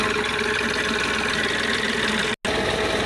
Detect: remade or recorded recorded